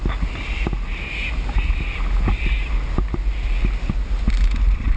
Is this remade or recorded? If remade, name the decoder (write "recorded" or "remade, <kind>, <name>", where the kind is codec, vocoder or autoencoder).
recorded